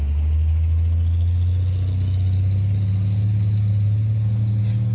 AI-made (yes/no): no